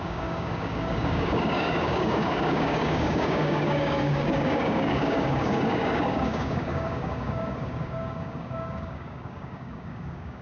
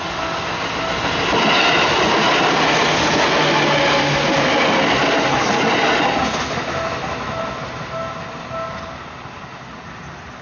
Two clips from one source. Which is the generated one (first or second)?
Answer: first